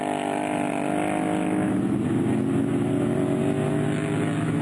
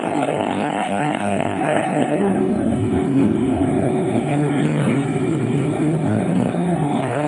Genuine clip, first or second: first